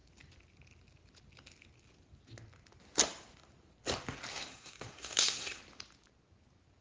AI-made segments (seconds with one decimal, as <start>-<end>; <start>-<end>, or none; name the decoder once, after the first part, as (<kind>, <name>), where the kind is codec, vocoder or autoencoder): 4.3-5.6 (codec, SNAC)